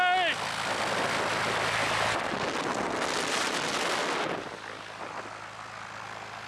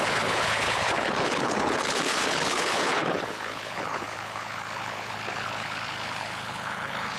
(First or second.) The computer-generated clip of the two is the second